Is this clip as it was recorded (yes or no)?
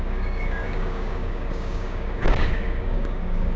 no